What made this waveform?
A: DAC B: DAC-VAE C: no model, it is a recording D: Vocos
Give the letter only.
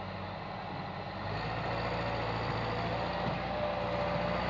C